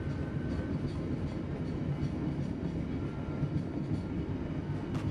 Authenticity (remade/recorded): recorded